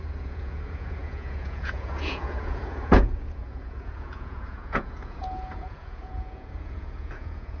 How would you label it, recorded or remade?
remade